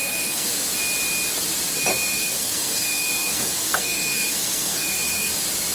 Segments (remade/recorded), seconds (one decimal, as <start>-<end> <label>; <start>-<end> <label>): 0.0-0.5 remade; 0.5-1.9 recorded; 1.9-5.3 remade; 5.3-5.7 recorded